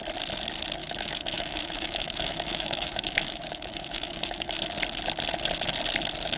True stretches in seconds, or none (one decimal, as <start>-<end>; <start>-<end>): 0.0-0.8; 4.6-6.4